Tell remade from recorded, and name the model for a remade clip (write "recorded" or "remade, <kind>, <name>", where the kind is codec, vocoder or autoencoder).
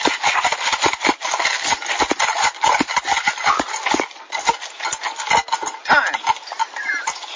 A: recorded